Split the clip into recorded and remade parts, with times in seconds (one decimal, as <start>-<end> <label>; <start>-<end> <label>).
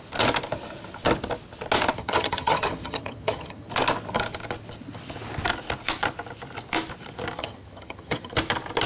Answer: 0.0-2.0 recorded; 2.0-3.7 remade; 3.7-7.4 recorded; 7.4-8.3 remade; 8.3-8.9 recorded